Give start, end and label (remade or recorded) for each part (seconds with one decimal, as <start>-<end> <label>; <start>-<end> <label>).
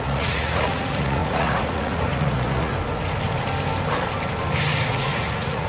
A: 0.0-2.7 remade; 2.7-4.9 recorded; 4.9-5.7 remade